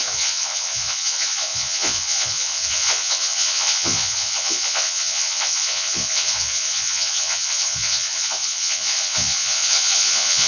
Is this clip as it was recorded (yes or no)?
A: no